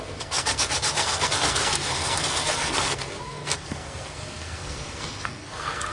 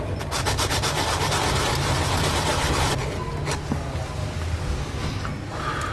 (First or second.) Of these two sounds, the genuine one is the second